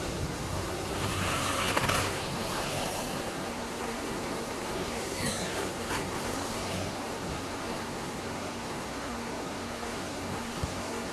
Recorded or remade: remade